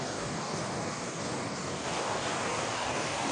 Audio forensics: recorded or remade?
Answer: remade